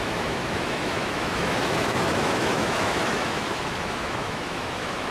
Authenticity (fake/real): fake